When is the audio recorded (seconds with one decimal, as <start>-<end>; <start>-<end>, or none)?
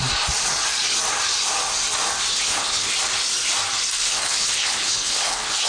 0.0-2.3; 2.9-4.0